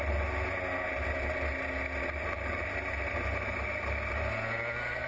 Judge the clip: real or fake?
real